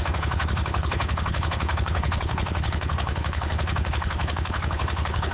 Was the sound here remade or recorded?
remade